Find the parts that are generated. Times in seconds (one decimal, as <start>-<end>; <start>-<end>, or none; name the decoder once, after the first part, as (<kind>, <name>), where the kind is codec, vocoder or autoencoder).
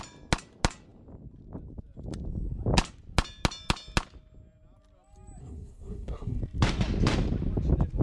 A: 5.4-6.4 (codec, SNAC)